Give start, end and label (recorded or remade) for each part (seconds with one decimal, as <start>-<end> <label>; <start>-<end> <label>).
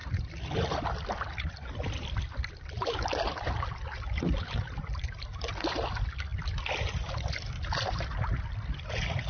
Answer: 0.0-5.2 remade; 5.2-6.3 recorded; 6.3-7.3 remade; 7.3-9.3 recorded